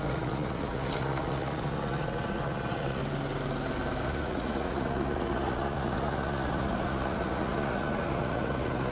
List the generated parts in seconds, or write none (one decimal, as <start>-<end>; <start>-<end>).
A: 0.0-3.0; 4.0-8.9